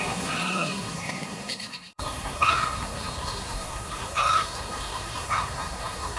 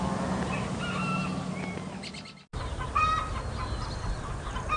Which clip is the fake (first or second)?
first